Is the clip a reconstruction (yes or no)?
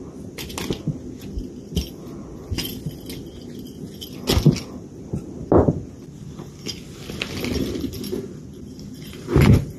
no